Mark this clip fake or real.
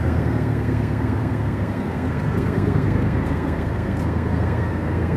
fake